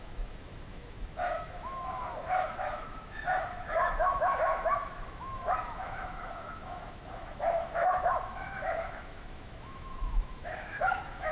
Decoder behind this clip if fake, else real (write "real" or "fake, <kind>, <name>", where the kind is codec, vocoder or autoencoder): fake, autoencoder, DAC-VAE